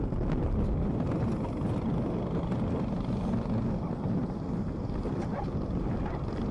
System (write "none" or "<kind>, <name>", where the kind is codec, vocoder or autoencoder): none